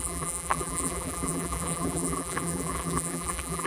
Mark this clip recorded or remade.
remade